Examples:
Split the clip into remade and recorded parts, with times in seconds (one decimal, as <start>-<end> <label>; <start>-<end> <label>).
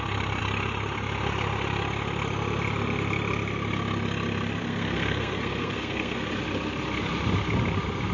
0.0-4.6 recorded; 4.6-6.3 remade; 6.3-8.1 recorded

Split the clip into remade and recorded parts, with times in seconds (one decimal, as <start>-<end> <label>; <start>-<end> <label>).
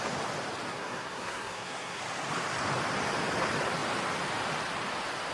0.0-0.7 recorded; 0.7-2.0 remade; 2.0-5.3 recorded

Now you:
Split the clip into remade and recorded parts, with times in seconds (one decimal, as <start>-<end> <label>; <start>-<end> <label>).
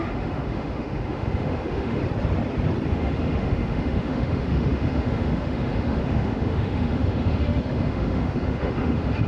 0.0-2.0 remade; 2.0-2.9 recorded; 2.9-9.3 remade